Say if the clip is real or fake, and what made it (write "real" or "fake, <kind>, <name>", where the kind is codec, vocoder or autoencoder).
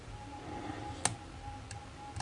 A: real